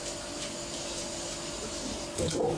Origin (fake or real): real